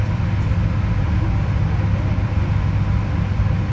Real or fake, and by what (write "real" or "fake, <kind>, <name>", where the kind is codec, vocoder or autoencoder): real